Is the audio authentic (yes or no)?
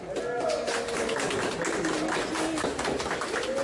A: yes